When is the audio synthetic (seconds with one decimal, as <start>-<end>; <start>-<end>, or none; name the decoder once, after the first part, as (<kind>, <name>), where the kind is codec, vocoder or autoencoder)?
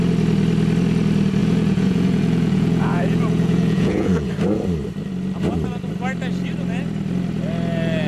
1.4-4.3 (vocoder, Vocos)